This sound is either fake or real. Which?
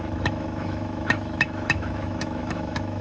fake